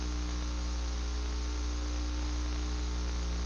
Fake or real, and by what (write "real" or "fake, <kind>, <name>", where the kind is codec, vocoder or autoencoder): real